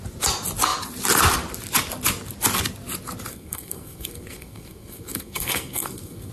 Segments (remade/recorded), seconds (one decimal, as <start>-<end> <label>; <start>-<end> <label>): 0.0-3.3 recorded; 3.3-6.3 remade